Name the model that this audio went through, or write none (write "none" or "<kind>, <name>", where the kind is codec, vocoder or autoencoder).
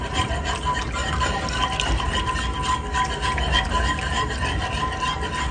none